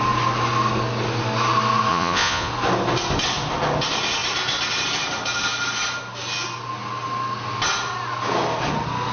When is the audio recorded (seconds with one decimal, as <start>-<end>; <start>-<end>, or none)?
0.0-1.9; 2.5-9.1